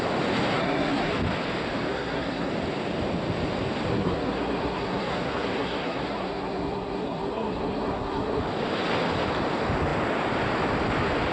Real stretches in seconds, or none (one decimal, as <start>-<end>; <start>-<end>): 0.0-0.5; 1.1-1.9; 2.5-3.9; 8.4-11.3